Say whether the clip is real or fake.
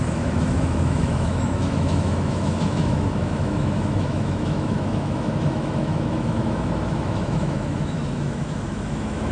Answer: fake